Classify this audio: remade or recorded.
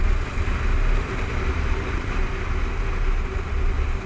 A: recorded